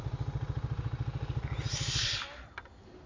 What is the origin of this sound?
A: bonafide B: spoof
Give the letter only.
A